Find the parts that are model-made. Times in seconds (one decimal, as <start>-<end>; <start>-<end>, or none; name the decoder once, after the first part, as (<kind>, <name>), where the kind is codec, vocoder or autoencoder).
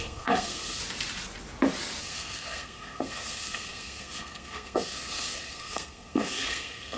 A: 0.0-0.8 (codec, SNAC); 2.0-7.0